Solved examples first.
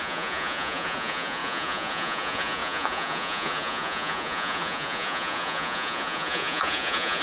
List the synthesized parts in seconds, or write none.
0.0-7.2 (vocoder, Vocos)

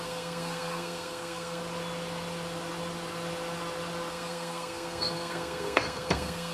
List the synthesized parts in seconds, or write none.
0.0-1.6 (codec, SNAC); 4.1-6.5